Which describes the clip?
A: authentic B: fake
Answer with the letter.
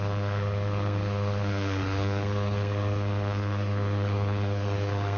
B